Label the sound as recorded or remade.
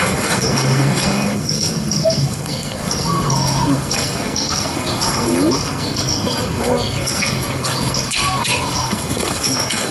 remade